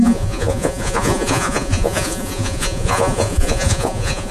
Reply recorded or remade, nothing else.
remade